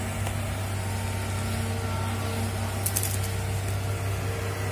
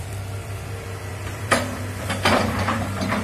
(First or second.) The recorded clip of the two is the first